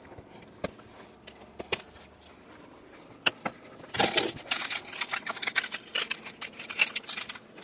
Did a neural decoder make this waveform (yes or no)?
no